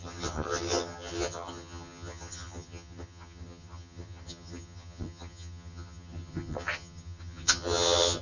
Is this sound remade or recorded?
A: remade